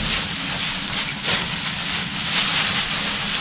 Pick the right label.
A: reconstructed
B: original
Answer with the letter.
B